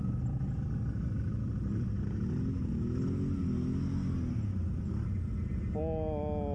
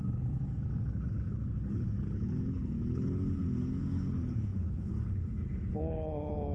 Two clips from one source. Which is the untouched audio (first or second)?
first